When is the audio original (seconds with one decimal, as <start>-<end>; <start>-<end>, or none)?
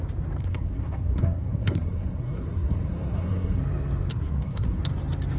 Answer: 0.0-0.4; 3.6-4.1; 4.8-5.4